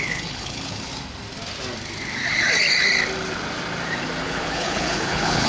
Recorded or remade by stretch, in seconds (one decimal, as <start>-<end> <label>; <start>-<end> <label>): 0.0-0.9 remade; 0.9-4.2 recorded; 4.2-5.5 remade